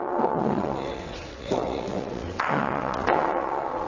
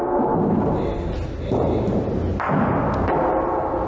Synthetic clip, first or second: first